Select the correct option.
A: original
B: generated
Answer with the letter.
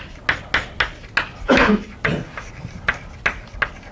A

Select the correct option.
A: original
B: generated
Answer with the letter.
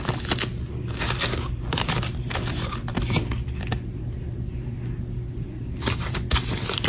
A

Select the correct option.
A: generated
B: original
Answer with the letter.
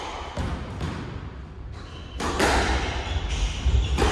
B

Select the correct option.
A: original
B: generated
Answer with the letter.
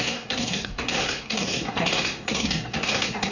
B